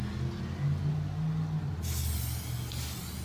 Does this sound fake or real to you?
real